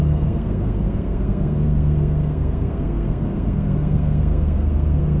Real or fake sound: fake